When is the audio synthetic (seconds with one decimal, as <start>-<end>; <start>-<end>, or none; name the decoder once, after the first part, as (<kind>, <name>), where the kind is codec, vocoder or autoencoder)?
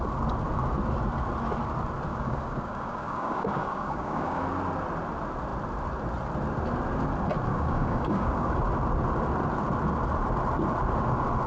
2.1-4.4 (codec, DAC); 7.5-8.5